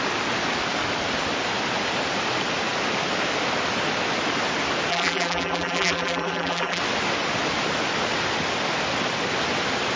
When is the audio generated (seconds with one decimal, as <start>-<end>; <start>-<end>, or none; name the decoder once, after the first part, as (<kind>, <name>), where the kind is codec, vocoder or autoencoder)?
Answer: 4.9-6.8 (vocoder, BigVGAN v2)

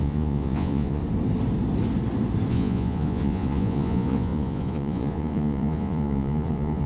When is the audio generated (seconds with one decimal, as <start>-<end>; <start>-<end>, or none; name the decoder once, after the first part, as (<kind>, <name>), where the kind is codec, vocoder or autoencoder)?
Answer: 0.0-1.0 (vocoder, Vocos); 2.5-6.9

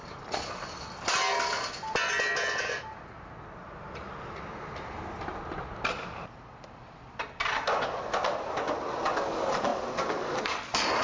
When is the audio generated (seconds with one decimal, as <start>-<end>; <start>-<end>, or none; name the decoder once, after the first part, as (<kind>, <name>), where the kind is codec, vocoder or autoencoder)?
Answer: none